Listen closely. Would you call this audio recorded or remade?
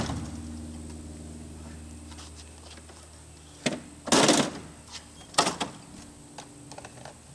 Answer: recorded